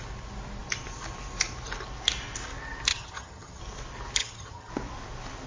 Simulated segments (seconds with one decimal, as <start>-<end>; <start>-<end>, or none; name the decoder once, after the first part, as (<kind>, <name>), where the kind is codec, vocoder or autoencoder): 2.9-3.6 (vocoder, HiFi-GAN); 4.2-4.7